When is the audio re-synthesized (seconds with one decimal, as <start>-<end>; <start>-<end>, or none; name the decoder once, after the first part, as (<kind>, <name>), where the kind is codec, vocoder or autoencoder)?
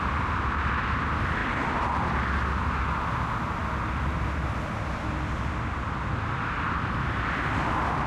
3.6-5.7 (vocoder, BigVGAN v2)